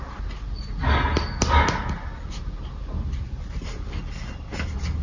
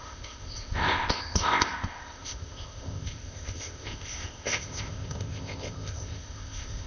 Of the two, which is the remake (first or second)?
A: second